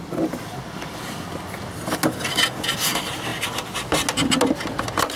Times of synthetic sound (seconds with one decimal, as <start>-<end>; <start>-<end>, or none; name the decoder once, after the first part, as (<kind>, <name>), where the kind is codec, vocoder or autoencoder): none